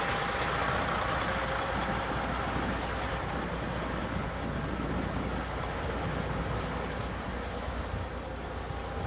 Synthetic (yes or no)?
no